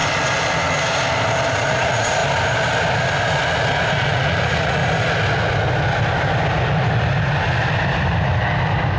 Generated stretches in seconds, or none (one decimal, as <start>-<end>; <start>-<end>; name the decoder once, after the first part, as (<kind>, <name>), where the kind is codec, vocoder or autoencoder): 1.6-2.2 (vocoder, Vocos); 3.9-4.8